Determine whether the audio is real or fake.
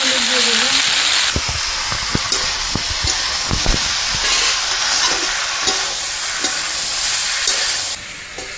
real